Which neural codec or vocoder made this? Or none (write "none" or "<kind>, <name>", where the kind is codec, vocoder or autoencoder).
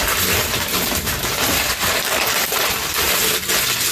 none